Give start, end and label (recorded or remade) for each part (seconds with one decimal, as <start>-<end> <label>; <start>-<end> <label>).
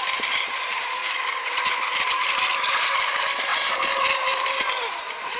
0.0-1.0 remade; 1.0-2.8 recorded; 2.8-3.5 remade; 3.5-5.4 recorded